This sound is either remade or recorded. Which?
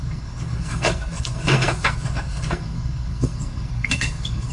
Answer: remade